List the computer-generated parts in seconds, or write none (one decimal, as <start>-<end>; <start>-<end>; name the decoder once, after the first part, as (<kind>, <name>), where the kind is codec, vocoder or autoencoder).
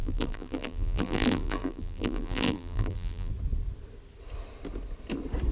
0.0-3.3 (vocoder, BigVGAN v2)